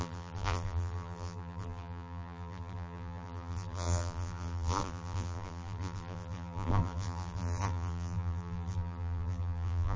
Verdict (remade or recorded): remade